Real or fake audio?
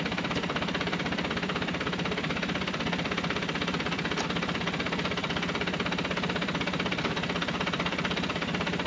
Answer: real